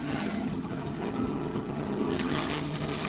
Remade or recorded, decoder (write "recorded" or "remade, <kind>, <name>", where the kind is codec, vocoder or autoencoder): remade, vocoder, HiFi-GAN